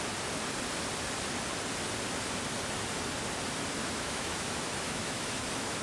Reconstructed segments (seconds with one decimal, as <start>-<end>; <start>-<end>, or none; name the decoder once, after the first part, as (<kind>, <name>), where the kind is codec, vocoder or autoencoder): 3.8-5.8 (autoencoder, DAC-VAE)